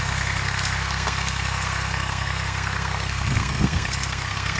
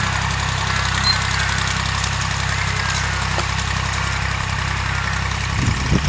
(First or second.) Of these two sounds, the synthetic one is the first